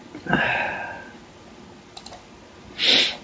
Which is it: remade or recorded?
recorded